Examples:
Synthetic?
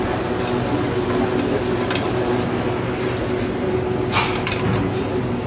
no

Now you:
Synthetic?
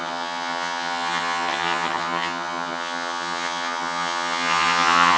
yes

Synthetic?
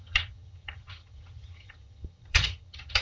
yes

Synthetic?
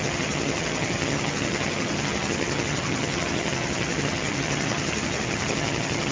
yes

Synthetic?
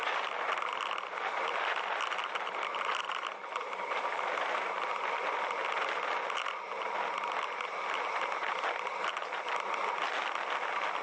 no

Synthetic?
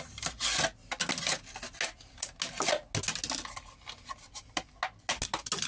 no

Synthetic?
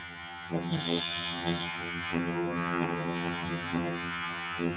yes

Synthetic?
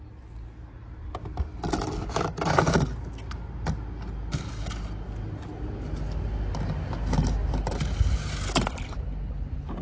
no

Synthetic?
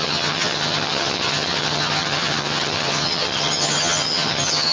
yes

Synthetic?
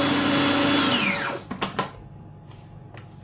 no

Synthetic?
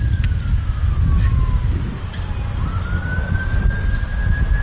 no